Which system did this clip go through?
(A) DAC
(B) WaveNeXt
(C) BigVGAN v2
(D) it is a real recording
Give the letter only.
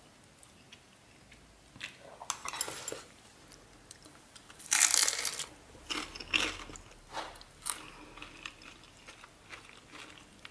D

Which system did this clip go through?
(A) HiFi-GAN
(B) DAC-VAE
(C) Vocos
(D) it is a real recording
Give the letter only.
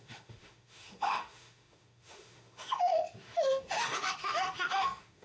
B